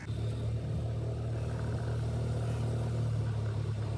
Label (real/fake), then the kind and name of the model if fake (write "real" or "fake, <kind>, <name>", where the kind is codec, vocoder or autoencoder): real